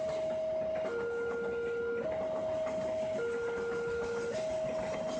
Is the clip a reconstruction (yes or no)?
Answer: no